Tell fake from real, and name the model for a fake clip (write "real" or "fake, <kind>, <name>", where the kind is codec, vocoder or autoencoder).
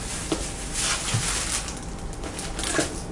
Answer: real